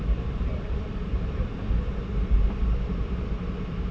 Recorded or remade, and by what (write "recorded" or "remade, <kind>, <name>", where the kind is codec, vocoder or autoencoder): remade, vocoder, BigVGAN v2